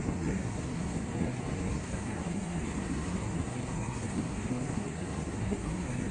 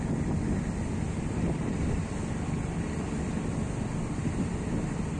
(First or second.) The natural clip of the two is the second